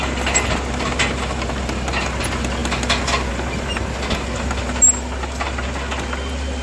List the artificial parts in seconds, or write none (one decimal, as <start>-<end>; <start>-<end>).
none